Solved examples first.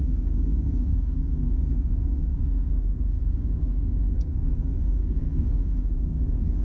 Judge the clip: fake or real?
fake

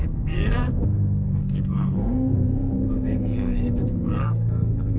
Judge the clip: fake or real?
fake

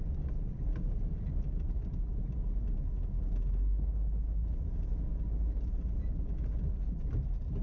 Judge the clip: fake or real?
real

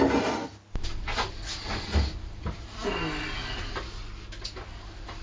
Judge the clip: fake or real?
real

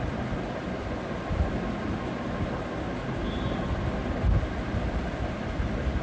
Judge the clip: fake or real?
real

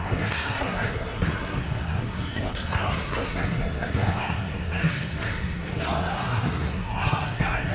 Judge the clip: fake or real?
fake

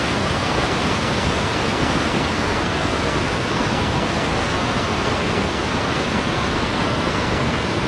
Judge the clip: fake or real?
fake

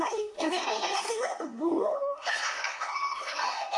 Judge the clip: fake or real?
fake